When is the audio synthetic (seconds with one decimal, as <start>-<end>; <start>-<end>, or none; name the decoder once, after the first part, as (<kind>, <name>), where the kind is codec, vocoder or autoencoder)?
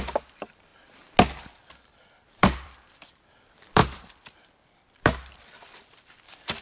0.0-0.7 (vocoder, BigVGAN v2); 1.5-6.6